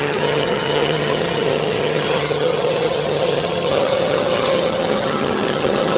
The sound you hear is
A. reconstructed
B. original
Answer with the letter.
A